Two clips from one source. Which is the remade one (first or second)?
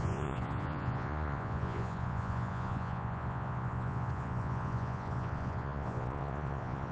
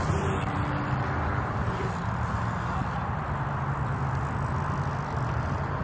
first